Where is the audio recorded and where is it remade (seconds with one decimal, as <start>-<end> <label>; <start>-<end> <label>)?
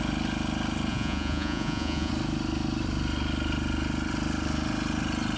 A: 0.0-0.9 recorded; 0.9-2.1 remade; 2.1-5.4 recorded